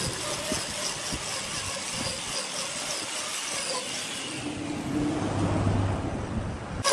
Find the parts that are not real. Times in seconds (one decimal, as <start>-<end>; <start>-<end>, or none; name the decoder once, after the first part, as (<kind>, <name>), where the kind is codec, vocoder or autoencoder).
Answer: none